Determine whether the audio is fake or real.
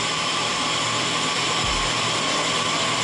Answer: fake